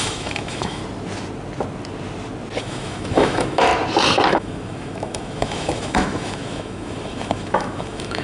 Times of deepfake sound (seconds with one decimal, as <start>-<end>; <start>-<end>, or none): 0.0-0.8; 2.6-3.7; 4.3-8.2